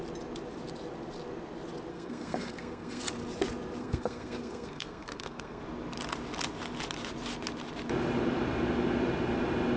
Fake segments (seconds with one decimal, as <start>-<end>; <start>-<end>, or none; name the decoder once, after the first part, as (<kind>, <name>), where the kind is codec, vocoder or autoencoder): 1.9-3.0 (codec, SNAC); 3.8-5.6